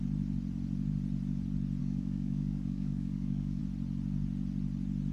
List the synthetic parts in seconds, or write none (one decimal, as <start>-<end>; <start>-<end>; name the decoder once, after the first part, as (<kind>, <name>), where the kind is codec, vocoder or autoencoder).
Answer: 1.8-3.6 (codec, DAC)